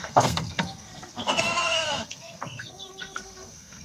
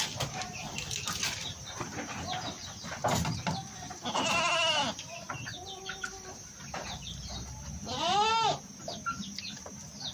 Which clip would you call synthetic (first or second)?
first